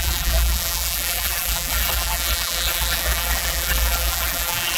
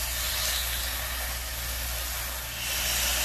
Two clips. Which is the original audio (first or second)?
second